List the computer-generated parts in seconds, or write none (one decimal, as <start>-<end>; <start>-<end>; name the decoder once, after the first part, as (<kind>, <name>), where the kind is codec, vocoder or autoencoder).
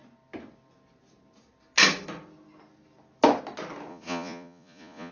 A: 3.9-5.1 (vocoder, Vocos)